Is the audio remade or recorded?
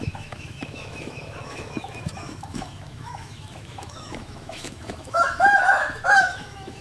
remade